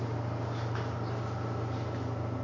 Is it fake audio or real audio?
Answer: real